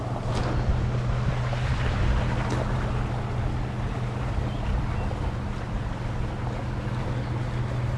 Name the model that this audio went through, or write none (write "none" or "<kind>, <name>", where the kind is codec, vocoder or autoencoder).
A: none